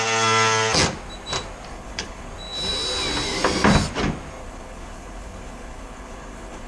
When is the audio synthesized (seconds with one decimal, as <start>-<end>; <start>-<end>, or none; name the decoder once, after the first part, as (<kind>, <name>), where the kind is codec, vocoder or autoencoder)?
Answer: 1.7-2.3 (codec, HILCodec); 4.4-6.7